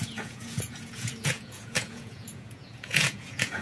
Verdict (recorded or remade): remade